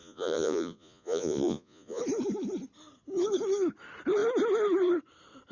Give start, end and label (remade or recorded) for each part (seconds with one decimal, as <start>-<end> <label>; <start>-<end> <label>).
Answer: 0.0-2.0 remade; 2.0-5.5 recorded